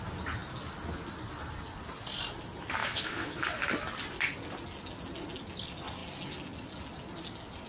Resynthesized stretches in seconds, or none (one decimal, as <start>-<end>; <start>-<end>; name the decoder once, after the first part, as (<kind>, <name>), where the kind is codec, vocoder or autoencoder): 2.8-3.5 (autoencoder, DAC-VAE)